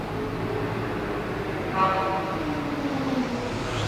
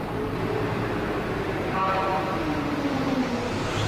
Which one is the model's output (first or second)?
second